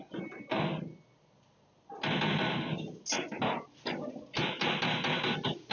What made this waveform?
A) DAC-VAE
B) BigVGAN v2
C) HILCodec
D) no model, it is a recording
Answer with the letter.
D